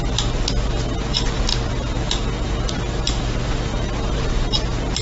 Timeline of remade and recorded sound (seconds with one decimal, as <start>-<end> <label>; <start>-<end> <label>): 0.0-5.0 recorded